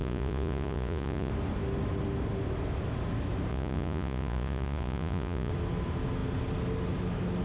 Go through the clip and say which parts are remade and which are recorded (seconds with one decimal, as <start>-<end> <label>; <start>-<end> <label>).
0.0-1.3 remade; 1.3-3.5 recorded; 3.5-5.5 remade; 5.5-7.4 recorded